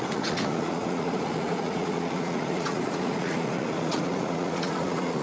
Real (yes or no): no